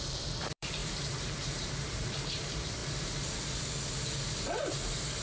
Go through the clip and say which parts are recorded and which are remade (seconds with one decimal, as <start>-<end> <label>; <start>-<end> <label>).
0.0-2.8 remade; 2.8-4.6 recorded; 4.6-5.2 remade